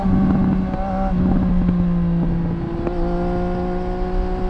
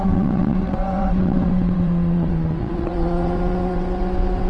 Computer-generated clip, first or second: second